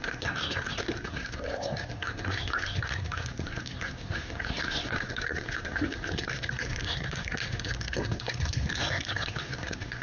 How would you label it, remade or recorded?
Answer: remade